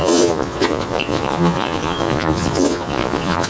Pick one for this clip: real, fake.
fake